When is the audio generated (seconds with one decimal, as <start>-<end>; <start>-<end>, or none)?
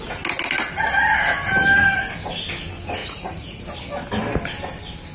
3.0-3.6